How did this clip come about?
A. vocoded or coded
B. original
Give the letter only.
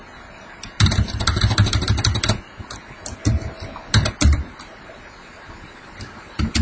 B